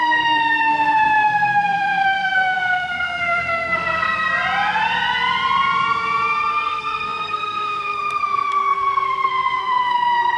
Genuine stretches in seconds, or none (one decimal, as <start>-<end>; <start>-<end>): 4.3-6.5